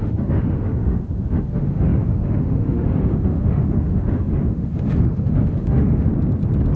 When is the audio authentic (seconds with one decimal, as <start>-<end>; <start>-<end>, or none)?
6.1-6.8